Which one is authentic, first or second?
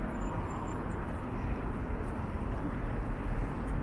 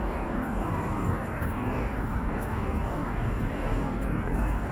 first